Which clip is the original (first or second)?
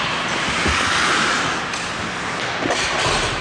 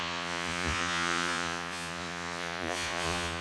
first